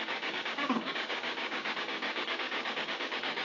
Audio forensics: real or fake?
fake